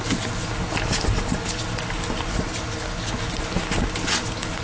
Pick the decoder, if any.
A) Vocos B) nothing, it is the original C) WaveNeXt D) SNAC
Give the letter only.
B